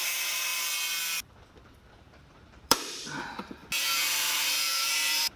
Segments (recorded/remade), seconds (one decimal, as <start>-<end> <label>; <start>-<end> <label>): 0.0-0.5 remade; 0.5-1.9 recorded; 1.9-3.6 remade; 3.6-4.3 recorded; 4.3-5.4 remade